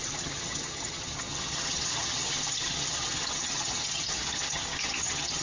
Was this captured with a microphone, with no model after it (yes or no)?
no